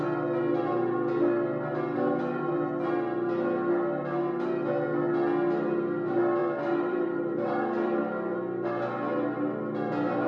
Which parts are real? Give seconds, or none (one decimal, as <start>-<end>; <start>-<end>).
0.0-6.4; 8.0-10.3